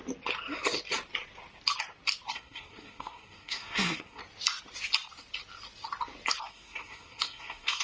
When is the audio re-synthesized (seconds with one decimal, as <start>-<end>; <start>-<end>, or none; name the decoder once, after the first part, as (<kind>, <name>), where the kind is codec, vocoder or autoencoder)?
2.3-4.2 (codec, SNAC); 6.4-7.8